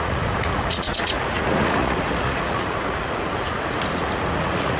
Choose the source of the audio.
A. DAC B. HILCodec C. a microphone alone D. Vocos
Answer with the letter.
D